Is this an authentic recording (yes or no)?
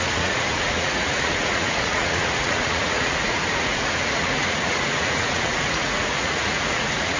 no